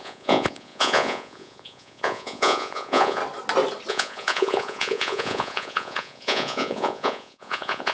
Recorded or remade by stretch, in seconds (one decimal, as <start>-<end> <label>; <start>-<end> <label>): 0.0-3.2 remade; 3.2-3.9 recorded; 3.9-7.9 remade

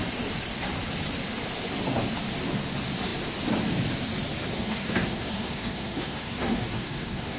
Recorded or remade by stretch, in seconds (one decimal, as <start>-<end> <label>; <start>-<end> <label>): 0.0-4.5 recorded; 4.5-7.4 remade